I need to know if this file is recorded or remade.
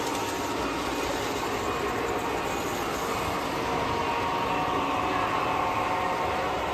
recorded